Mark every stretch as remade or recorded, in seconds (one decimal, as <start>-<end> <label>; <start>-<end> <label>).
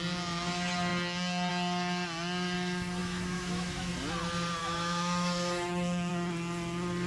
0.0-3.0 recorded; 3.0-3.9 remade; 3.9-4.6 recorded; 4.6-6.1 remade; 6.1-7.1 recorded